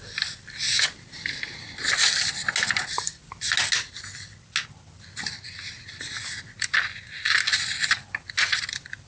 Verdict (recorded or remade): recorded